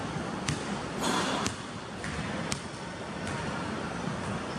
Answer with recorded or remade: remade